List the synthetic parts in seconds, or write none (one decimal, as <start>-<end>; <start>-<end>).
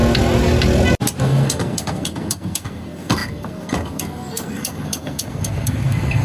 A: 1.2-6.2